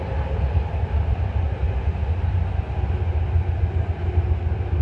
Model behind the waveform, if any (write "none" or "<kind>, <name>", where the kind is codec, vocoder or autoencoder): none